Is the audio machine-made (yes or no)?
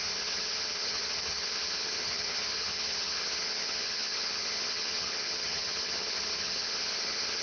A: yes